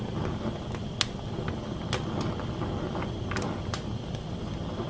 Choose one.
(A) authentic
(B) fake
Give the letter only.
A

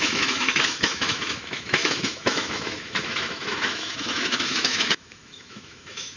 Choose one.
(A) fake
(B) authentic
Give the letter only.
A